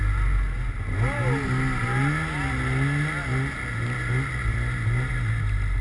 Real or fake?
real